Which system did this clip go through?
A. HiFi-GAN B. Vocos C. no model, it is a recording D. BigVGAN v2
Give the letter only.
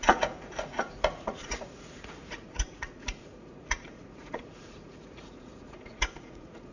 B